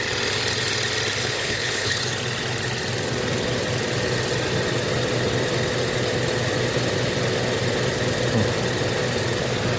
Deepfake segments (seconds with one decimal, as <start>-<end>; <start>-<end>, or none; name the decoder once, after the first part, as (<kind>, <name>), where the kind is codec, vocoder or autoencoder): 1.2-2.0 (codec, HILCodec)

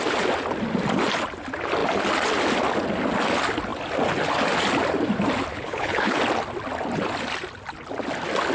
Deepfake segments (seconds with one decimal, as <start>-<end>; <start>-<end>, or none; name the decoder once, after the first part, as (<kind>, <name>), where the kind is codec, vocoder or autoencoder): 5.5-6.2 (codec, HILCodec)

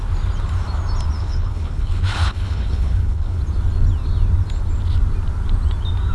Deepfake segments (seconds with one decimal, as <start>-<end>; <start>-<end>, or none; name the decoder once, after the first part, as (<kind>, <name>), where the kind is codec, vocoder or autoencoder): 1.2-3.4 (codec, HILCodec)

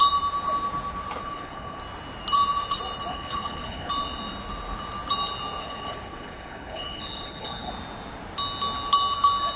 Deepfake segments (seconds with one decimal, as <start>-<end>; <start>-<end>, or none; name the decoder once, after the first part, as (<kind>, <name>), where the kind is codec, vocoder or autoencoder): 1.2-1.8 (codec, HILCodec); 3.1-3.9; 5.6-7.7

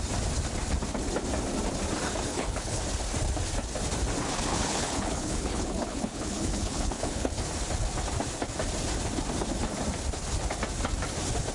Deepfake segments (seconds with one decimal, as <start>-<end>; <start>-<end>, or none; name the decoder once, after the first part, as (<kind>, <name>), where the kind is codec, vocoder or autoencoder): 2.3-2.8 (codec, HILCodec); 4.5-7.4

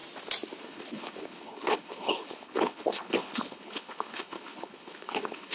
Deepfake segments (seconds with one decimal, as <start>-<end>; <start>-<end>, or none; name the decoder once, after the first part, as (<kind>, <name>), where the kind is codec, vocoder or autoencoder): 0.6-5.5 (codec, HILCodec)

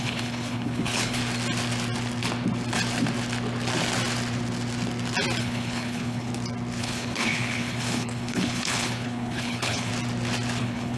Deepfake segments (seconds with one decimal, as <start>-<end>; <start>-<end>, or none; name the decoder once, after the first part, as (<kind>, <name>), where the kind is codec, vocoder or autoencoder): 0.0-1.2 (codec, HILCodec); 5.4-6.3; 6.8-9.9; 10.6-11.0

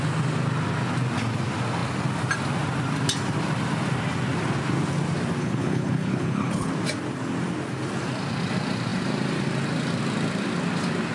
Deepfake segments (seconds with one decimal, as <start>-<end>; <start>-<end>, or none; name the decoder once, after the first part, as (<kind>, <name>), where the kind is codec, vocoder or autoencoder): 5.4-6.7 (codec, HILCodec)